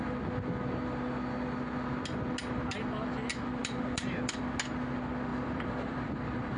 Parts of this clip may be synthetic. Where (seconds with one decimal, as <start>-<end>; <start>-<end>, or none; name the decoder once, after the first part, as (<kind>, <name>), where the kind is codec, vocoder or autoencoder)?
3.3-4.4 (vocoder, BigVGAN v2); 5.3-6.6